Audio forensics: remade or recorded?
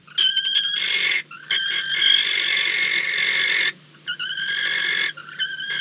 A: recorded